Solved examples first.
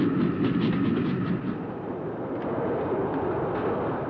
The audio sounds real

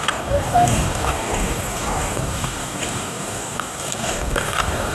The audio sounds fake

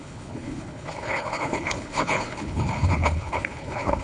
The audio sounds fake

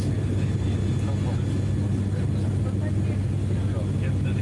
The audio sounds real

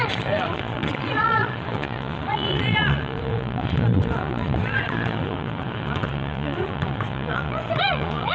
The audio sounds fake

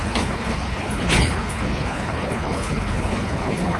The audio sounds fake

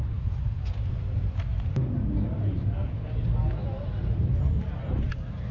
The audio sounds real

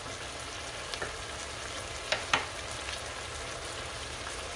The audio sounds real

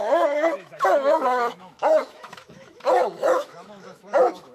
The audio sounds fake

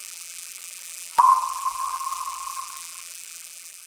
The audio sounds fake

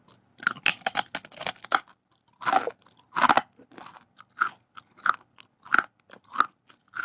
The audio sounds real